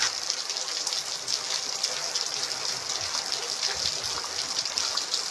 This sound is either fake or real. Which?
real